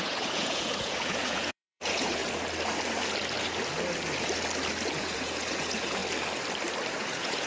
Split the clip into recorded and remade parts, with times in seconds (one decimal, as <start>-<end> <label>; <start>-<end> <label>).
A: 0.0-2.2 remade; 2.2-5.0 recorded; 5.0-6.0 remade; 6.0-6.9 recorded; 6.9-7.5 remade